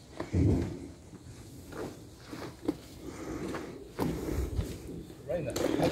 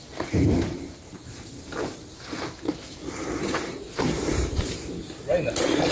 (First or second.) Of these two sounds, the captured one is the first